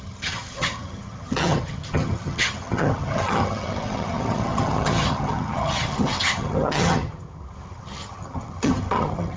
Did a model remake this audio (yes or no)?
yes